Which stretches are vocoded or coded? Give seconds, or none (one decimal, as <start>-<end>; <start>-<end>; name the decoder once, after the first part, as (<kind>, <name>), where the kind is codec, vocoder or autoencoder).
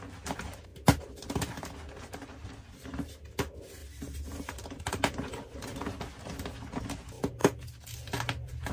none